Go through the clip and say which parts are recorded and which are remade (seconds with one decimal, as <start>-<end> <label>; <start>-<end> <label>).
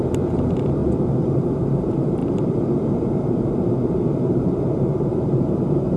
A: 0.0-0.8 remade; 0.8-1.3 recorded; 1.3-2.2 remade; 2.2-3.2 recorded; 3.2-6.0 remade